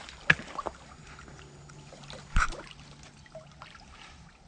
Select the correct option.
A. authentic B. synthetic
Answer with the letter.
A